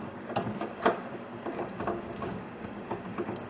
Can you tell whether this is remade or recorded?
remade